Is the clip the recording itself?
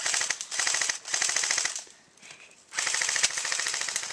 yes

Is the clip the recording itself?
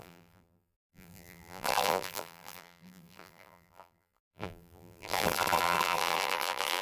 no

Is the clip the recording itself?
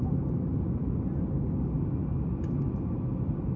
yes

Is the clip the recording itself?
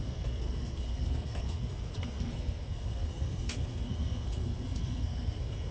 no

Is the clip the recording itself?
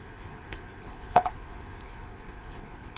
no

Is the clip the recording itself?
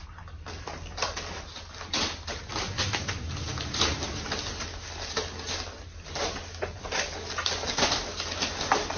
yes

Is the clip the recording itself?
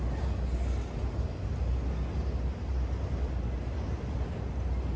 yes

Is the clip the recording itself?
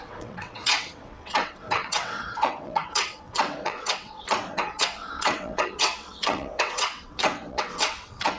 no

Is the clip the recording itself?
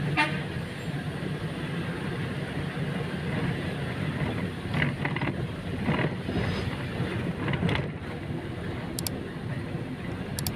yes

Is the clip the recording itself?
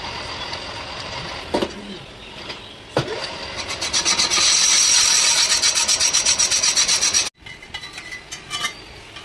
yes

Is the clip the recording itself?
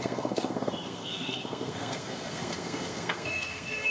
no